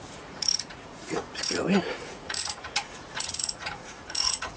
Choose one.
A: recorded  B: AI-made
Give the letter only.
B